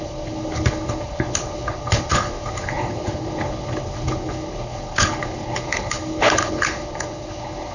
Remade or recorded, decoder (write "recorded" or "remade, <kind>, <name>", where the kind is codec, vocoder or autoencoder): remade, codec, HILCodec